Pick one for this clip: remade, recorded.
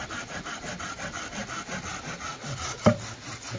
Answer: recorded